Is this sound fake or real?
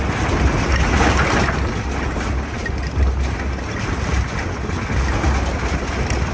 real